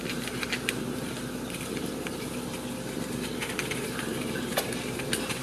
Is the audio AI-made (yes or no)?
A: no